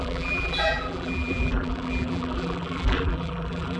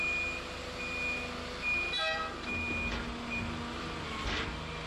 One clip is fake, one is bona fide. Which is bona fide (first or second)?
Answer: second